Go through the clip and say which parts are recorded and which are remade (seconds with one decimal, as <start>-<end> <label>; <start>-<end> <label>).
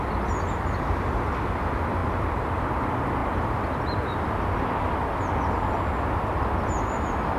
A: 0.0-3.2 recorded; 3.2-4.3 remade; 4.3-7.4 recorded